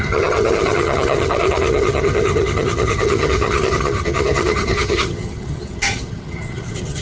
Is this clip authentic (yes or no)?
no